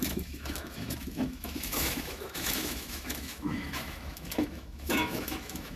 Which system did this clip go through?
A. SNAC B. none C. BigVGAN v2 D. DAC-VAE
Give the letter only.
D